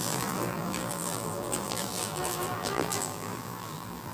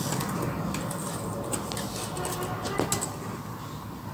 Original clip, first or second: second